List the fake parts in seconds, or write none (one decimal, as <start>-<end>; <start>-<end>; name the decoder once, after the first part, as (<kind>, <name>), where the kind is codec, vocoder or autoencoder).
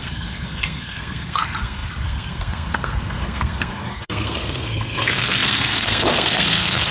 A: 0.0-6.9 (codec, SNAC)